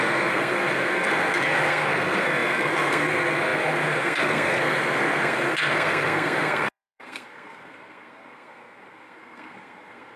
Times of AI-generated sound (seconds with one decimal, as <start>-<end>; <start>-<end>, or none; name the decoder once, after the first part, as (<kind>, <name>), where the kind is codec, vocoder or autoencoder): 0.0-10.2 (codec, SNAC)